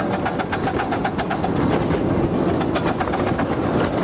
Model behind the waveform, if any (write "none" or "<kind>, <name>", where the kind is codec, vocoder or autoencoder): none